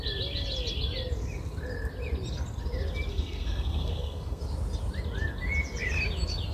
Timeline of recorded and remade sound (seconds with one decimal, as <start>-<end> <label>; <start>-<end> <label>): 0.0-3.1 recorded; 3.1-4.4 remade; 4.4-6.5 recorded